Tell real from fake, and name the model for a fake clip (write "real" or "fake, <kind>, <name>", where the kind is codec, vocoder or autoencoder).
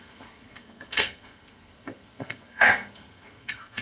fake, codec, SNAC